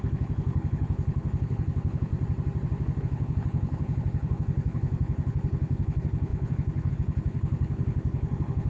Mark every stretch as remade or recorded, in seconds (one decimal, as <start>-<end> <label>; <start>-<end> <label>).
0.0-2.1 remade; 2.1-3.0 recorded; 3.0-8.7 remade